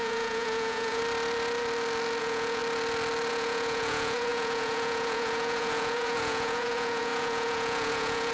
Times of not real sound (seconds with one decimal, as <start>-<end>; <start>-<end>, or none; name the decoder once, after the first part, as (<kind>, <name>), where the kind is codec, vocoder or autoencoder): 0.0-1.0 (vocoder, Vocos); 2.2-2.6; 3.3-8.3